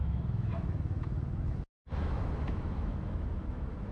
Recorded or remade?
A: remade